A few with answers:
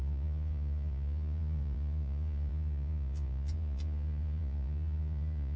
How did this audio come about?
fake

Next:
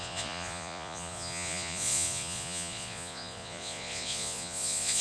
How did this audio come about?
fake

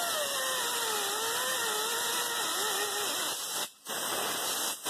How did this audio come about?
real